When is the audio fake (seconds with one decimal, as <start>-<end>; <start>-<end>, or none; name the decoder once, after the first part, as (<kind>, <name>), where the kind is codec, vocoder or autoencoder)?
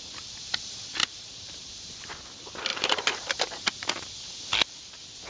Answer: 1.0-1.7 (vocoder, BigVGAN v2); 2.7-3.3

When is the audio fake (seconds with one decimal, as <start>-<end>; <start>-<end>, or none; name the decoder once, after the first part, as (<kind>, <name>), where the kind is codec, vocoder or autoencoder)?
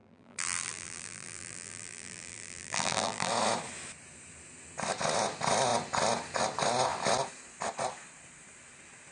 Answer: 0.0-3.3 (vocoder, BigVGAN v2)